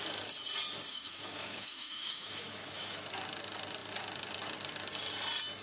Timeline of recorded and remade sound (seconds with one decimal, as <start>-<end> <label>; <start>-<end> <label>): 0.0-0.9 recorded; 0.9-3.1 remade; 3.1-5.6 recorded